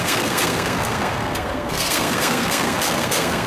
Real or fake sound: fake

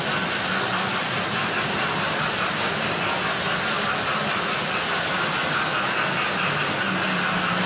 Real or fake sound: real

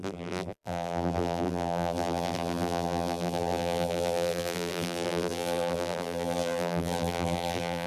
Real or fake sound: fake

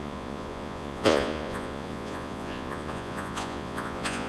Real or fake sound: fake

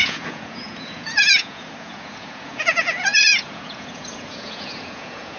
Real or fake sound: fake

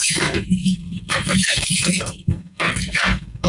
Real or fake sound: fake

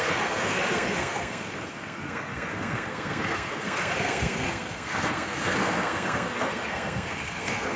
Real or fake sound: fake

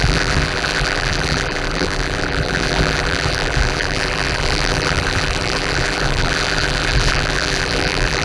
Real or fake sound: fake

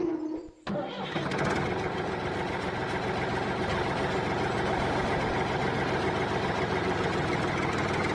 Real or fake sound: real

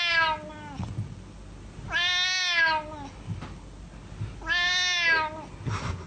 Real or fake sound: real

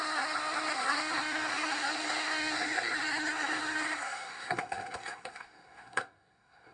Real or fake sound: fake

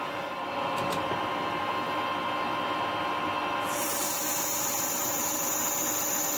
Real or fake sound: real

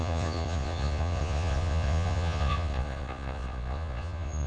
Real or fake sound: fake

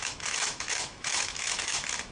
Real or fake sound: fake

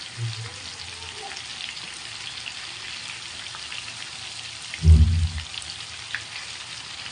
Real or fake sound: real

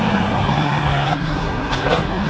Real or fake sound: fake